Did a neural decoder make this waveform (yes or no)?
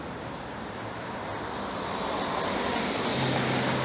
no